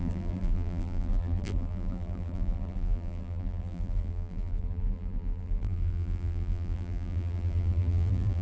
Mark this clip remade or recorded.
remade